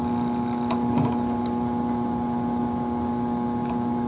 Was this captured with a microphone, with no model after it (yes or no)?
yes